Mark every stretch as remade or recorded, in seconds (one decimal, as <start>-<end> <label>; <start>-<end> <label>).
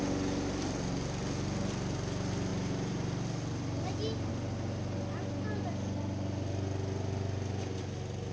0.0-8.3 recorded